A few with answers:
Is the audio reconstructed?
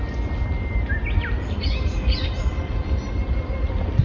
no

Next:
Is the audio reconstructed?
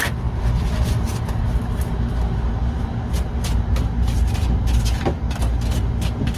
no